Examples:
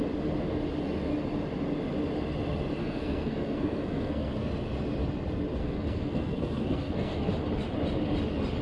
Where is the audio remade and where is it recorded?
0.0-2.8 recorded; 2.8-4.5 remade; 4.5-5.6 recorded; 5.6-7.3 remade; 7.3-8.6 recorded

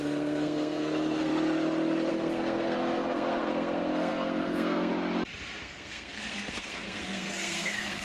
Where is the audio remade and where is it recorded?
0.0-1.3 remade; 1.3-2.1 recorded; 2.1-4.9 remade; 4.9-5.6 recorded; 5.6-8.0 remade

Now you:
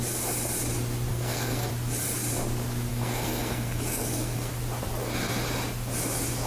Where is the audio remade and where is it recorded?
0.0-1.1 recorded; 1.1-1.7 remade; 1.7-2.9 recorded; 2.9-4.5 remade; 4.5-6.5 recorded

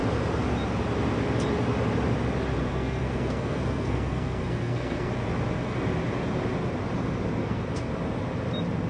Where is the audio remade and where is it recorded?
0.0-2.6 recorded; 2.6-5.1 remade; 5.1-7.4 recorded; 7.4-7.9 remade; 7.9-8.9 recorded

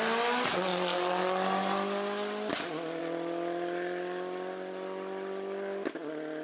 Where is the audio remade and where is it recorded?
0.0-6.4 recorded